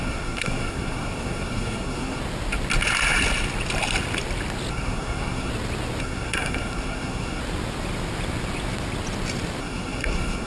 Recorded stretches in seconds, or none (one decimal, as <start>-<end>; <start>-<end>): 2.2-4.7; 5.5-6.0; 7.4-9.6